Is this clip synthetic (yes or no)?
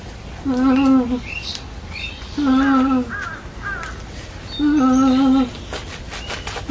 no